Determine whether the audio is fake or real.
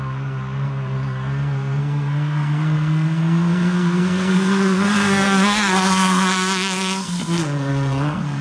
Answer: fake